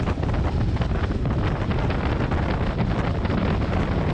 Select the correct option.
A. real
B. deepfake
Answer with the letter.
A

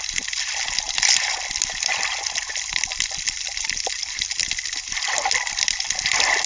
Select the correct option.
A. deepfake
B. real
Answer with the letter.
B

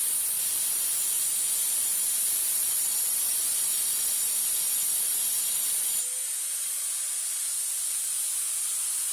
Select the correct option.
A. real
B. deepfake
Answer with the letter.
A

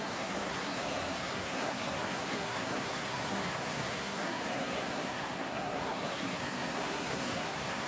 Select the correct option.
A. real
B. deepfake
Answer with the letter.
B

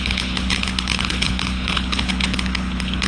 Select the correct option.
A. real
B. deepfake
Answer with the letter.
B